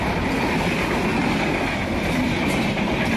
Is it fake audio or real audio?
real